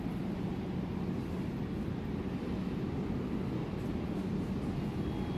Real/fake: real